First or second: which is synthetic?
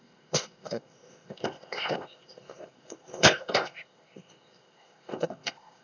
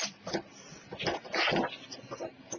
first